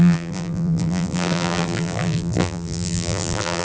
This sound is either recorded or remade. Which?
remade